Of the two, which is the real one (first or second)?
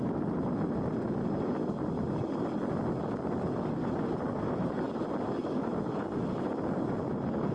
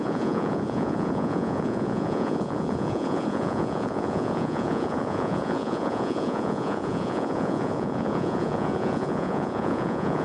first